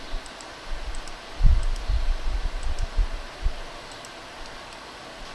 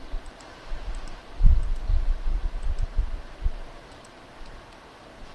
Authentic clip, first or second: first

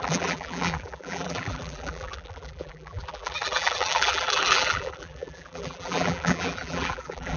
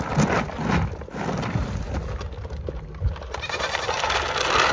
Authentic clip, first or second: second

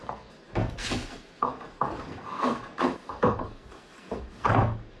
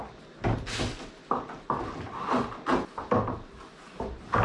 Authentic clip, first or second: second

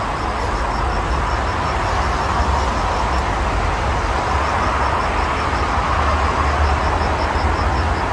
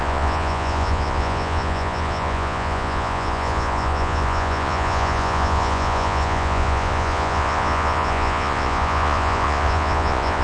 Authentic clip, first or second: first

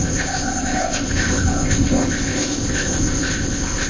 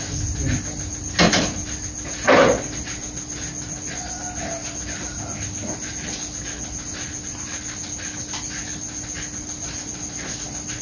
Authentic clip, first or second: second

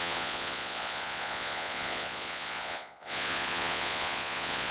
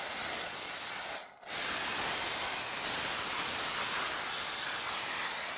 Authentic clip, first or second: second